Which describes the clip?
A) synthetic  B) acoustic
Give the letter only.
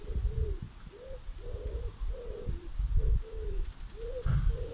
A